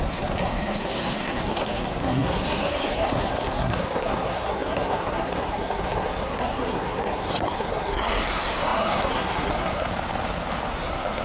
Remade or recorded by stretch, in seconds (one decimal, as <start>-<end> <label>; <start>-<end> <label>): 0.0-9.9 remade; 9.9-10.7 recorded; 10.7-11.2 remade

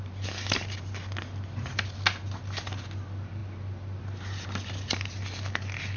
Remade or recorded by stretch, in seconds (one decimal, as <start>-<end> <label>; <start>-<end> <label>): 0.0-6.0 recorded

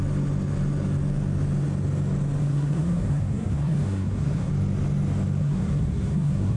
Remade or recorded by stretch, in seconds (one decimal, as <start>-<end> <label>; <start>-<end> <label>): 0.0-2.4 recorded; 2.4-4.5 remade; 4.5-5.4 recorded; 5.4-6.6 remade

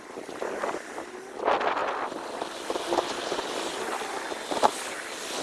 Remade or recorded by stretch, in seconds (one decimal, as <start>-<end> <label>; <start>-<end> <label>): 0.0-5.4 recorded

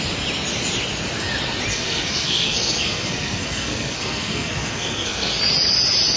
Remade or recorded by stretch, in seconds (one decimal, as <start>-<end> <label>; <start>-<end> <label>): 0.0-1.7 recorded; 1.7-5.4 remade; 5.4-6.2 recorded

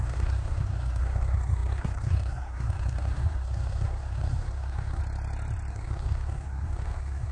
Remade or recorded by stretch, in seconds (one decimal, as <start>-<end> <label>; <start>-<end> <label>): 0.0-5.0 remade; 5.0-5.7 recorded; 5.7-7.3 remade